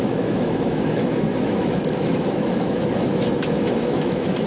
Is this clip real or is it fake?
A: fake